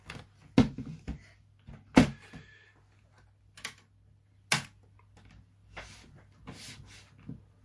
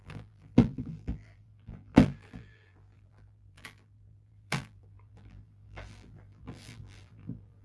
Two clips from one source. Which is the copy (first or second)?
second